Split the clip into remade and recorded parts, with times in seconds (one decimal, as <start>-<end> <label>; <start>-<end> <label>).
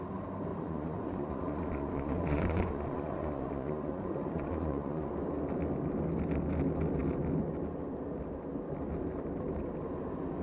0.0-0.5 recorded; 0.5-5.1 remade; 5.1-10.4 recorded